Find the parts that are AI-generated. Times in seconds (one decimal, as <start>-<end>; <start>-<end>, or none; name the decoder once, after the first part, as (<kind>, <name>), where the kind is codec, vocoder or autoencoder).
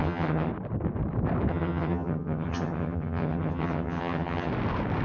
0.0-0.5 (vocoder, HiFi-GAN); 1.5-4.5